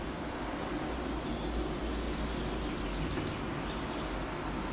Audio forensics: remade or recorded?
recorded